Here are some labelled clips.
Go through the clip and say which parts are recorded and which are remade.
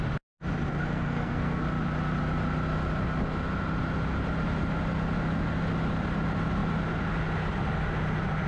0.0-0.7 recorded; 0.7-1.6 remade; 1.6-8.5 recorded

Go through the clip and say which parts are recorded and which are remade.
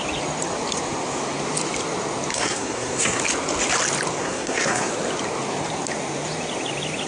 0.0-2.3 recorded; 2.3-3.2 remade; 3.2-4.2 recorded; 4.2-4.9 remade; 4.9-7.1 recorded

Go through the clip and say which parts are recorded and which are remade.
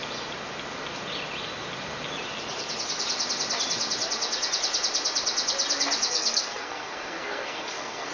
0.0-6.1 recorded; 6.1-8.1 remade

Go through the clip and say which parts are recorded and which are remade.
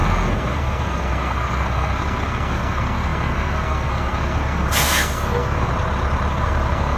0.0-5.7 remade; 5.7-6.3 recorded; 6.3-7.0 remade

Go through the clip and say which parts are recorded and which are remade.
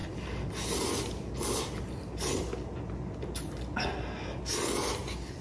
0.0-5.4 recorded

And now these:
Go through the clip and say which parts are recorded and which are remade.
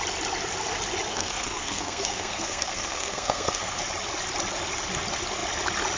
0.0-1.1 recorded; 1.1-3.8 remade; 3.8-6.0 recorded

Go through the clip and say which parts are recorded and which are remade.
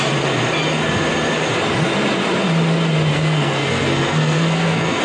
0.0-3.1 recorded; 3.1-5.0 remade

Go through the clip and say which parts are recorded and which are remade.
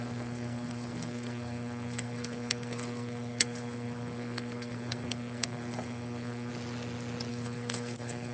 0.0-6.5 remade; 6.5-7.3 recorded; 7.3-8.3 remade